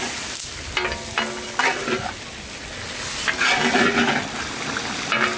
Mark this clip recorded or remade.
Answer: recorded